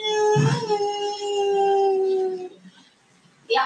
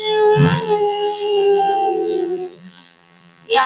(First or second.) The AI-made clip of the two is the second